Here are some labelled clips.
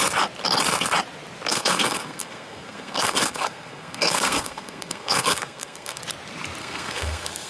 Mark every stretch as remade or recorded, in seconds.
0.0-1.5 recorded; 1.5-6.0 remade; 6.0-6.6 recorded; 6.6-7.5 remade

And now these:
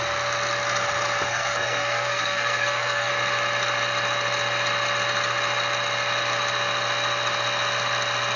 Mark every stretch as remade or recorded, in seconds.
0.0-1.3 recorded; 1.3-3.1 remade; 3.1-8.4 recorded

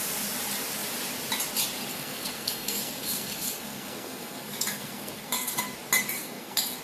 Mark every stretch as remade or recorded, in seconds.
0.0-1.9 recorded; 1.9-5.6 remade; 5.6-6.2 recorded; 6.2-6.8 remade

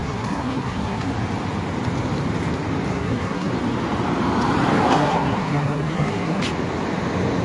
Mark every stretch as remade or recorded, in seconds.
0.0-1.1 remade; 1.1-2.9 recorded; 2.9-3.5 remade; 3.5-4.9 recorded; 4.9-6.4 remade; 6.4-7.4 recorded

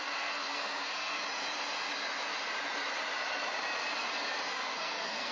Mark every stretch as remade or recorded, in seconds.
0.0-1.2 remade; 1.2-4.4 recorded; 4.4-5.3 remade